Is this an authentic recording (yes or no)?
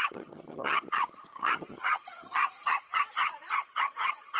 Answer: no